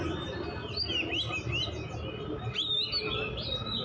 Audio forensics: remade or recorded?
recorded